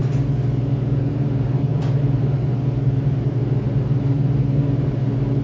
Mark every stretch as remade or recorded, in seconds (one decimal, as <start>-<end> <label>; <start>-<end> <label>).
0.0-1.0 recorded; 1.0-5.4 remade